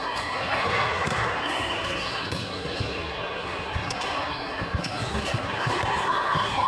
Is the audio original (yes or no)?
no